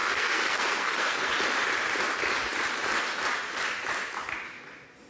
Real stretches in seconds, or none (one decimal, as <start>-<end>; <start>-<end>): 1.3-5.1